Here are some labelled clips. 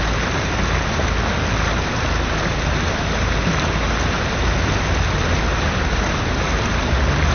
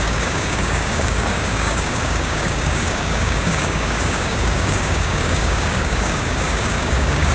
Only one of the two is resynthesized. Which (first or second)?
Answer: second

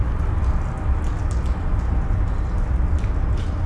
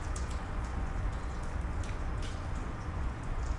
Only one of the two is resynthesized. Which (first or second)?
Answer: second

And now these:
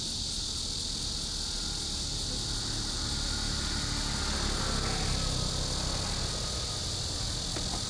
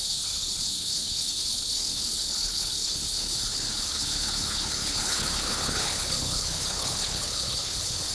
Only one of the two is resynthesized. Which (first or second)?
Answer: second